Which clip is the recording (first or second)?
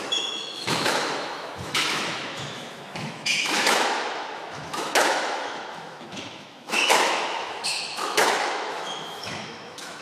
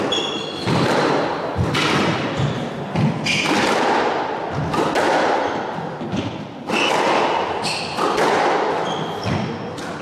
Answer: second